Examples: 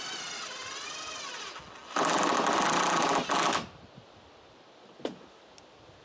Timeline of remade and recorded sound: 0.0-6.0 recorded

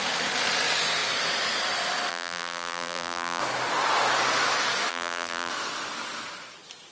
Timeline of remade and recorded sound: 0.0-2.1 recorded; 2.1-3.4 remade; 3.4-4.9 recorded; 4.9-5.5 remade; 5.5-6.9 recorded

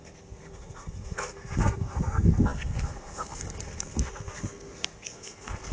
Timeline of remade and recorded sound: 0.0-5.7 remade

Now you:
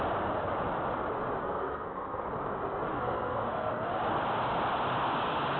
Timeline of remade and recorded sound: 0.0-1.4 recorded; 1.4-2.2 remade; 2.2-2.9 recorded; 2.9-3.7 remade; 3.7-5.6 recorded

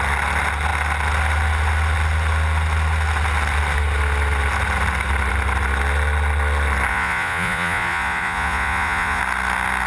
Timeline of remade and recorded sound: 0.0-6.9 recorded; 6.9-9.2 remade; 9.2-9.9 recorded